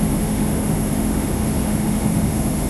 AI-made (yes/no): yes